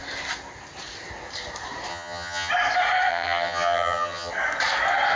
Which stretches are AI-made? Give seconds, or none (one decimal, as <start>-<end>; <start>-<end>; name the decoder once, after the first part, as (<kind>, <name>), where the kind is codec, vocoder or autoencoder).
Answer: 1.9-2.5 (vocoder, HiFi-GAN); 3.1-4.3